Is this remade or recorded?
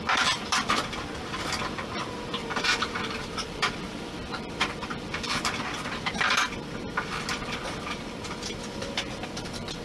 remade